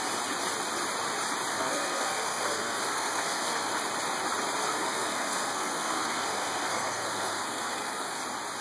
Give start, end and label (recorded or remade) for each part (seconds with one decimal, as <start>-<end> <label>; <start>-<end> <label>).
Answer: 0.0-1.5 recorded; 1.5-3.7 remade; 3.7-4.7 recorded; 4.7-8.2 remade; 8.2-8.6 recorded